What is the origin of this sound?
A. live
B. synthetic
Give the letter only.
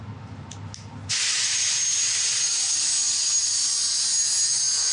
A